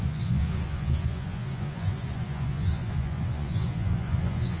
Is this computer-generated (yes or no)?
yes